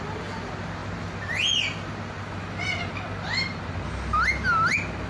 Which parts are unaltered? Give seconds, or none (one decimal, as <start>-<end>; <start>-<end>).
0.0-5.1